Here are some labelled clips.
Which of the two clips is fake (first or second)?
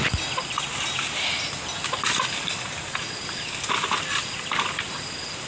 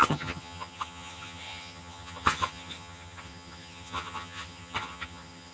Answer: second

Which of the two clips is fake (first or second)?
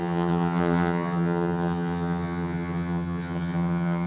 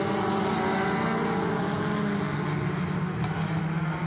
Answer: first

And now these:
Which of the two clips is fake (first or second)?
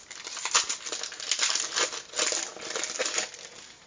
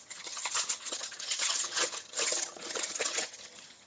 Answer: second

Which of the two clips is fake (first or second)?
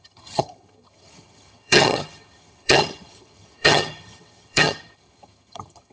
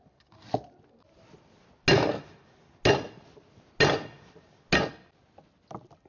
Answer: first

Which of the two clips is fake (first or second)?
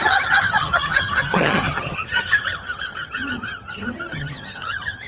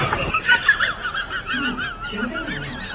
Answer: first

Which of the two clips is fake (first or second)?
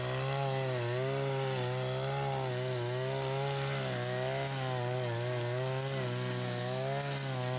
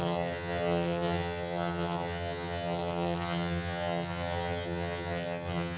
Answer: second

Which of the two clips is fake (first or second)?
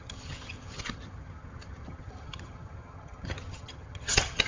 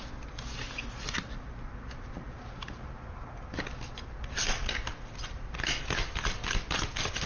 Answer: first